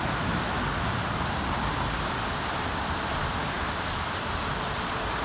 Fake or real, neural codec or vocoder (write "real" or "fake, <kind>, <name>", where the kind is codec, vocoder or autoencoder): fake, vocoder, BigVGAN v2